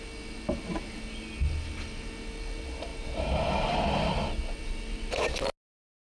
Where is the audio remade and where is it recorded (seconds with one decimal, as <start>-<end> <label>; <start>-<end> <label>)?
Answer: 0.0-6.1 recorded